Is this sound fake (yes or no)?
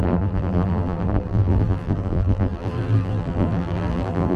yes